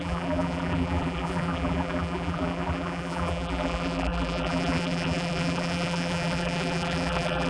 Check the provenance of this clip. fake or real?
fake